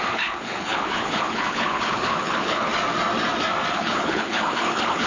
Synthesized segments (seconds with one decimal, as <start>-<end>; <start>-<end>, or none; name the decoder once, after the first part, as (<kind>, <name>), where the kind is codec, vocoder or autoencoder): 0.0-2.7 (codec, HILCodec); 3.7-5.1